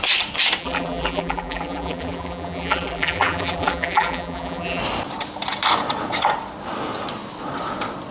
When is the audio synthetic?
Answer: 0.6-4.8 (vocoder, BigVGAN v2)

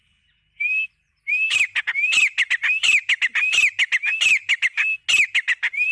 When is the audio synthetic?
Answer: none

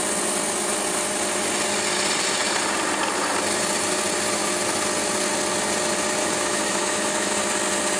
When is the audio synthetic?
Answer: 6.2-7.4 (autoencoder, DAC-VAE)

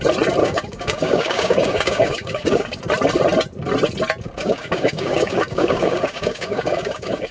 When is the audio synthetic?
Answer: 0.4-2.8 (codec, DAC); 4.4-7.3

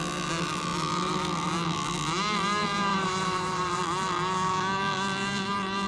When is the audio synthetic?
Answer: 2.9-3.8 (vocoder, BigVGAN v2)